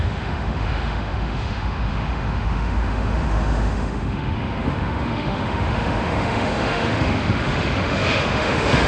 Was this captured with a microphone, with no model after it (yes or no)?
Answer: no